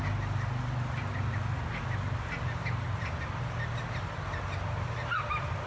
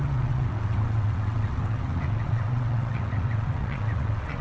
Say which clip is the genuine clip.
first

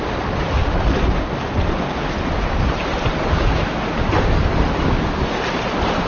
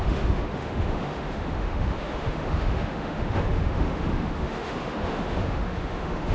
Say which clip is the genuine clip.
first